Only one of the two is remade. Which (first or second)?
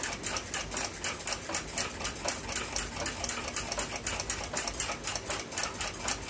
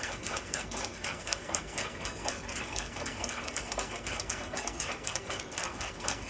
second